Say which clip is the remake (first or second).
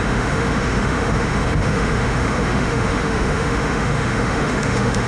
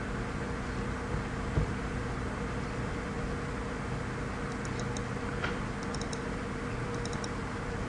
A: first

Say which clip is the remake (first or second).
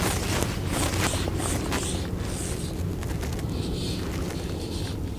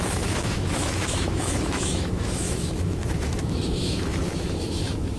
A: second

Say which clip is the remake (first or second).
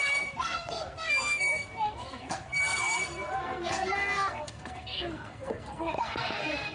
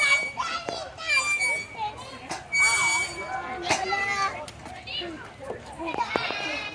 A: first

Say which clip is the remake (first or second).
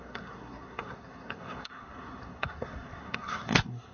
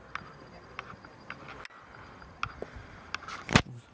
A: first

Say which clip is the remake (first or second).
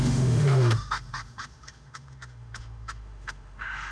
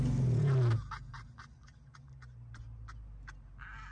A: first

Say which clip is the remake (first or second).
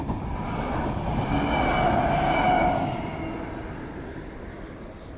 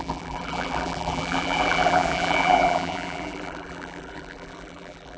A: second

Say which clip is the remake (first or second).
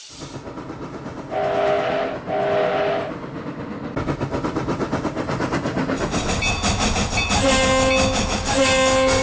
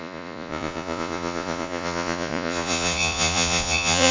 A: second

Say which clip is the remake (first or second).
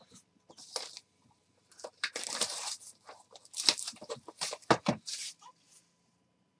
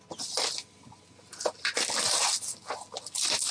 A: first